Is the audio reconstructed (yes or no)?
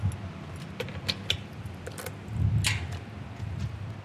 no